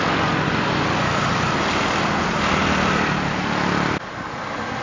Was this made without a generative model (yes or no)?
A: yes